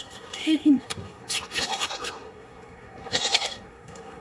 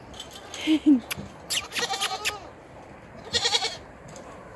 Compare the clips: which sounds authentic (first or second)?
second